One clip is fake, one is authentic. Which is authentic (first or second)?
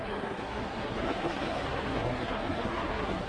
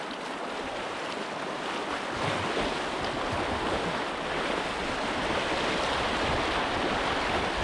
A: second